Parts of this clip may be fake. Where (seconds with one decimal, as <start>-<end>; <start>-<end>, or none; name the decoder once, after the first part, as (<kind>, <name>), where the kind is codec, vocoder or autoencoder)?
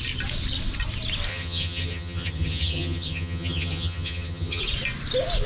1.3-4.6 (vocoder, HiFi-GAN)